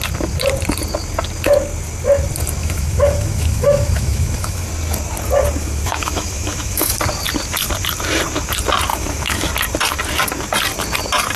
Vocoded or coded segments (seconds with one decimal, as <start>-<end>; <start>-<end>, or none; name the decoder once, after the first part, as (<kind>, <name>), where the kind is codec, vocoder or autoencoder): 2.6-4.7 (autoencoder, DAC-VAE); 5.6-6.9; 8.9-9.5

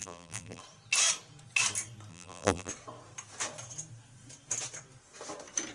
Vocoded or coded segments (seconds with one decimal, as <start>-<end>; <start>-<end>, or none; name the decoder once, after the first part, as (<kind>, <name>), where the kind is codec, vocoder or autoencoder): 0.0-0.6 (vocoder, BigVGAN v2); 2.1-2.7